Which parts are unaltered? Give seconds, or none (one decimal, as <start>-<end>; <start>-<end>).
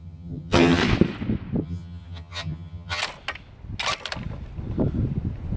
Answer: 0.8-1.6; 3.0-5.6